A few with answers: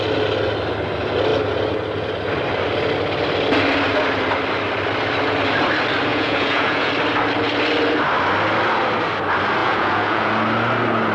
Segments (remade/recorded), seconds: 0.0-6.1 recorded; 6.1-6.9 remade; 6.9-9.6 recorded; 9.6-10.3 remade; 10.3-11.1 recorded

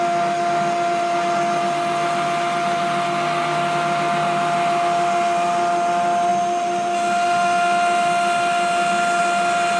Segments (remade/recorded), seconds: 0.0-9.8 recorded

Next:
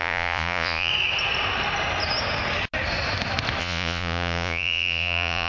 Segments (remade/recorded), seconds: 0.0-0.9 remade; 0.9-3.6 recorded; 3.6-5.5 remade